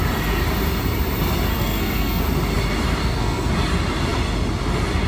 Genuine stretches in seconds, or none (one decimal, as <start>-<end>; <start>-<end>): 0.0-1.5; 2.2-3.0; 3.5-5.1